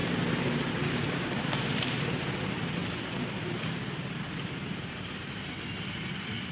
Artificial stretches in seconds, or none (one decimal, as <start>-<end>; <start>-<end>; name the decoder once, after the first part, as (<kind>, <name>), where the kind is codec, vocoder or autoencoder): 0.0-2.3 (vocoder, BigVGAN v2); 2.8-5.6

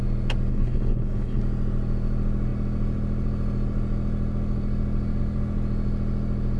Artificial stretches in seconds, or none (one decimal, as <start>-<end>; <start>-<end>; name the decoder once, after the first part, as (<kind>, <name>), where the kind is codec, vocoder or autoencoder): 0.5-1.4 (codec, HILCodec)

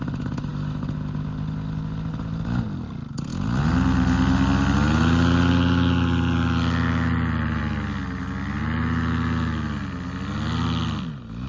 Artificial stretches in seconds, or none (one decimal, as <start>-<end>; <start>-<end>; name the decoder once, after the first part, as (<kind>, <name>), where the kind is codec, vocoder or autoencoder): none

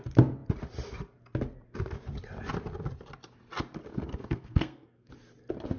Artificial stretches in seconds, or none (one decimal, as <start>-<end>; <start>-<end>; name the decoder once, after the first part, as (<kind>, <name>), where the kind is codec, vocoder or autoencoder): 3.9-5.1 (codec, SNAC)

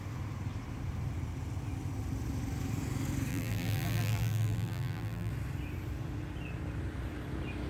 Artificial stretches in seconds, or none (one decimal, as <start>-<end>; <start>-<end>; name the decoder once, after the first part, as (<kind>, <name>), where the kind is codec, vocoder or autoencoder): 3.3-5.3 (vocoder, BigVGAN v2)

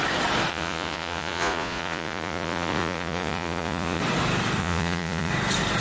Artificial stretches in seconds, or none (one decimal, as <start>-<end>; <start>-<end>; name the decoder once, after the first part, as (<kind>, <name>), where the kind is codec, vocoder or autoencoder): 0.5-4.0 (vocoder, Vocos); 4.6-5.3

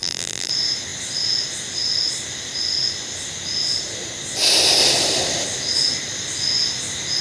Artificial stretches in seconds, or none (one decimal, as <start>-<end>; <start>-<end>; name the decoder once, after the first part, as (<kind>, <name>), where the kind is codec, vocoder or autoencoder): 0.0-0.5 (vocoder, BigVGAN v2)

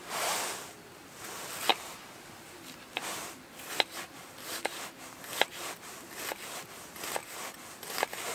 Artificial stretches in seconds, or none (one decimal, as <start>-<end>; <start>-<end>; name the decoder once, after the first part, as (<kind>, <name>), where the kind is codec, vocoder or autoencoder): 1.7-5.0 (vocoder, BigVGAN v2)